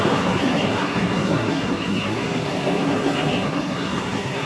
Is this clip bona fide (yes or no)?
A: no